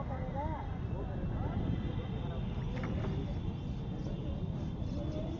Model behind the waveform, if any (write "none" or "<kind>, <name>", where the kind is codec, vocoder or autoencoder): none